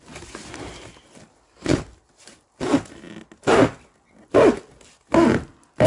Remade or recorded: recorded